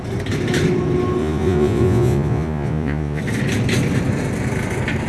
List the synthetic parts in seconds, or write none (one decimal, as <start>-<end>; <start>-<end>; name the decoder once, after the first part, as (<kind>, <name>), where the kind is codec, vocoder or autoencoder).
1.2-3.2 (vocoder, Vocos)